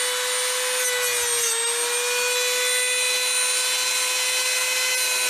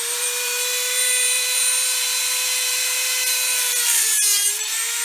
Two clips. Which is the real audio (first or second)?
first